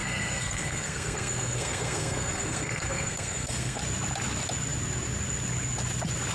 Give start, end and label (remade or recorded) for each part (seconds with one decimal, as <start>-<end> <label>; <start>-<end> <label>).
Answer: 0.0-3.8 remade; 3.8-6.3 recorded